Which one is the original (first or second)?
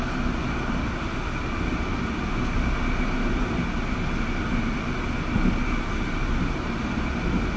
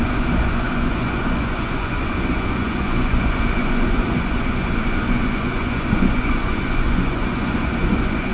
first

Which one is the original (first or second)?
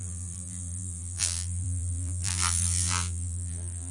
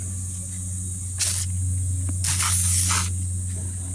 second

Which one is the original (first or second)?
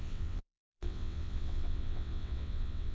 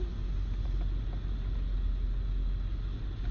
second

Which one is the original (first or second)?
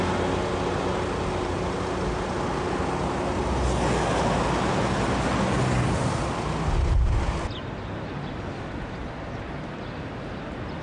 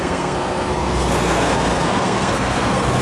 first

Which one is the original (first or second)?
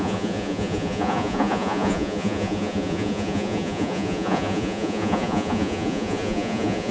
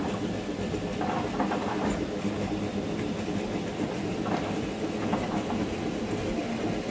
second